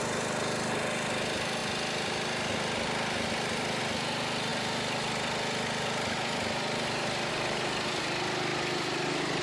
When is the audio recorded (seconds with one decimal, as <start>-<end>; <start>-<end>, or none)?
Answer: 0.0-9.4